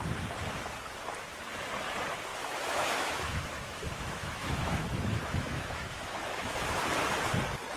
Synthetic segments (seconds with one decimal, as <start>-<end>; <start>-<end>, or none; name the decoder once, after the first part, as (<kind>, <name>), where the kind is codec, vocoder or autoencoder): 2.3-6.6 (autoencoder, DAC-VAE)